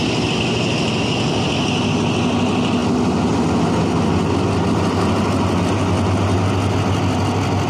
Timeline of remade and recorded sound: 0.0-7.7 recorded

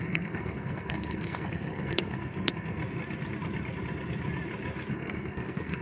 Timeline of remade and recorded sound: 0.0-2.8 remade; 2.8-4.9 recorded; 4.9-5.8 remade

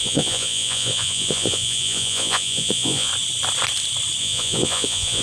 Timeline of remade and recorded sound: 0.0-3.1 remade; 3.1-4.2 recorded; 4.2-5.2 remade

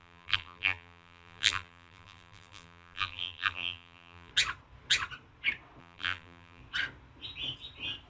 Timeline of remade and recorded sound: 0.0-4.3 remade; 4.3-5.8 recorded; 5.8-6.6 remade; 6.6-8.1 recorded

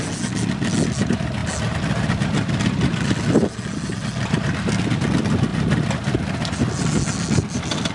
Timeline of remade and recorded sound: 0.0-7.9 recorded

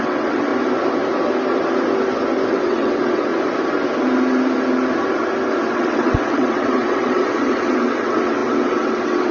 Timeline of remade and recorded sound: 0.0-0.5 remade; 0.5-2.5 recorded; 2.5-3.3 remade; 3.3-5.7 recorded; 5.7-9.3 remade